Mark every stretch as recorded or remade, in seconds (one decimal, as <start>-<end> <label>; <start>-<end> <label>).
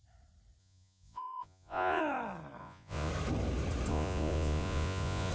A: 0.0-0.6 recorded; 0.6-2.0 remade; 2.0-2.6 recorded; 2.6-3.1 remade; 3.1-3.9 recorded; 3.9-5.3 remade